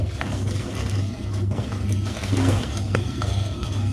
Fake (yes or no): yes